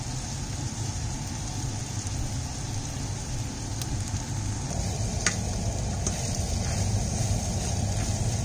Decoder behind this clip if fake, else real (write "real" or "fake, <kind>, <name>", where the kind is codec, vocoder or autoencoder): real